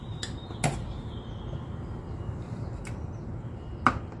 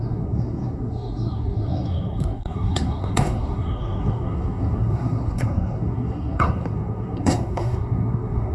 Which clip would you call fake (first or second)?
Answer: second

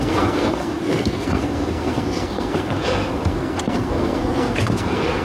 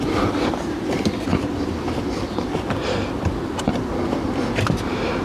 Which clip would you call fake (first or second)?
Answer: first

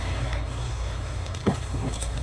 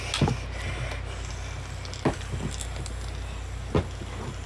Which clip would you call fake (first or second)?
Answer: first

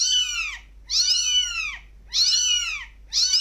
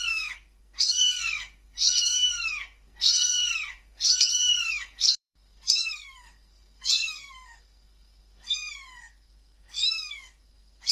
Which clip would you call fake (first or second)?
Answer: second